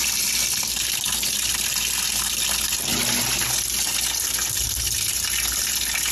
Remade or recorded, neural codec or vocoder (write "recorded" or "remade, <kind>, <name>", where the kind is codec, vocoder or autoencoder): recorded